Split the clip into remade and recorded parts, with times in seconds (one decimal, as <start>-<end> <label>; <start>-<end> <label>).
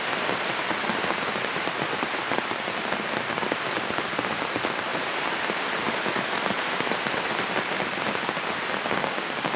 0.0-9.0 recorded; 9.0-9.6 remade